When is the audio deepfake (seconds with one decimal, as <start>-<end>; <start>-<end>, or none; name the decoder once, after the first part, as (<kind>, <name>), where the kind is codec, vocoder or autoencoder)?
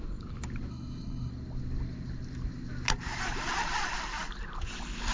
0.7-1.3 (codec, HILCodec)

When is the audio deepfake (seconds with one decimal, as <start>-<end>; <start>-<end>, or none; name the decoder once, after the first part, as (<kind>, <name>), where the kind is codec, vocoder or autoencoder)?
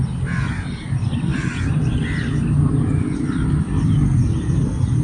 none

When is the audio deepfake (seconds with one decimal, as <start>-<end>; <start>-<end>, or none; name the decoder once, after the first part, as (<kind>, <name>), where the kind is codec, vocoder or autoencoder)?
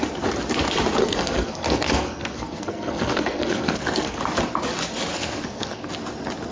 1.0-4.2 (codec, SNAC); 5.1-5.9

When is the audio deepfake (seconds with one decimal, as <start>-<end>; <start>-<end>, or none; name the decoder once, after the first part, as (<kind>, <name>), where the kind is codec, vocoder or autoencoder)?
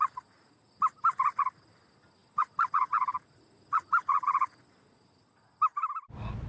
none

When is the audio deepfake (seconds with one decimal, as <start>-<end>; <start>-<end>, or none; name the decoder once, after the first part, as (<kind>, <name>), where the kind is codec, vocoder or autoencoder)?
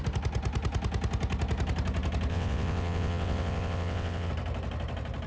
2.3-4.3 (vocoder, WaveNeXt)